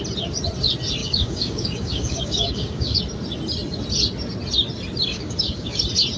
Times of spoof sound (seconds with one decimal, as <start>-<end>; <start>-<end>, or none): 1.0-3.0; 5.1-5.8